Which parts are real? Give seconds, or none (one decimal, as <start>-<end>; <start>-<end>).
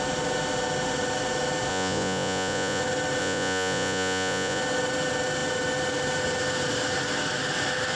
0.0-1.7; 2.8-3.2; 4.6-8.0